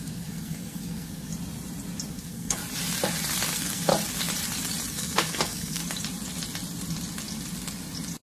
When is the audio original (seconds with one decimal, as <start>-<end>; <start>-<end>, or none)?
1.3-2.1; 2.6-3.5; 3.9-4.9; 5.8-8.3